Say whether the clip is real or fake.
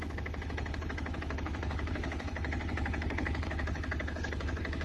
fake